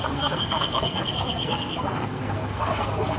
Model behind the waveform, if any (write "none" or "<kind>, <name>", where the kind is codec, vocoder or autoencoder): codec, SNAC